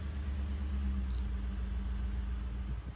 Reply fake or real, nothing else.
real